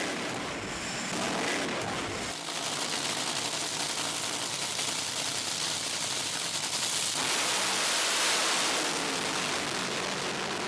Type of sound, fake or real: real